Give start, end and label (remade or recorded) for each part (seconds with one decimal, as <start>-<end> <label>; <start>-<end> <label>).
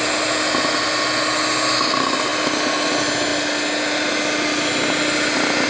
0.0-5.7 recorded